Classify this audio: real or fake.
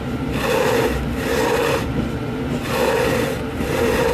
real